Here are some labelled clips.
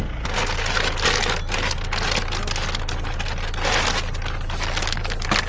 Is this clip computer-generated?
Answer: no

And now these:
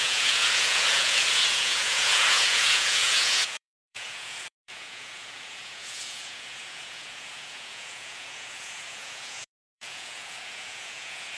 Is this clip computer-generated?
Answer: yes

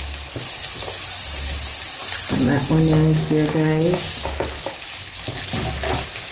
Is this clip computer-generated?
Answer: no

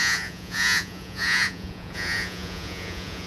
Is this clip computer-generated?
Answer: yes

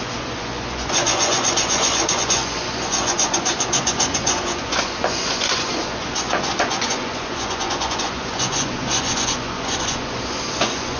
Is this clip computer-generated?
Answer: yes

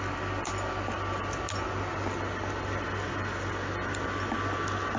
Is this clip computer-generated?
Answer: no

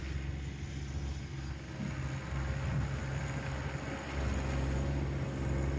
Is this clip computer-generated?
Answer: no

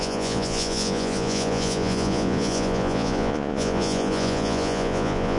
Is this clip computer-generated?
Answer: yes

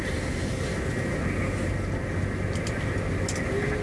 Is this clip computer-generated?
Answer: no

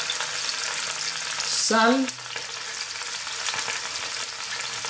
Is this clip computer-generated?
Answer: no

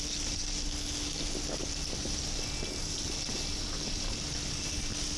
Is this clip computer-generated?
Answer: no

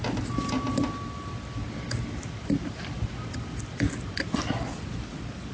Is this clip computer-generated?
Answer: no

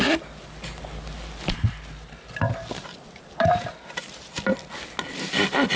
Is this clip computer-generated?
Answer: no